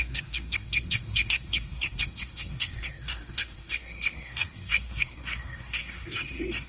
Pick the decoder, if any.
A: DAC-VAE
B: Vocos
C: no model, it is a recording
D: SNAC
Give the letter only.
D